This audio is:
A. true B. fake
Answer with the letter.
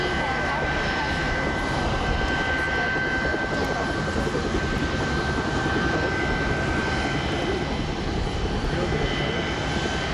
A